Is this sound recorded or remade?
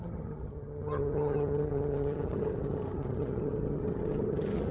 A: remade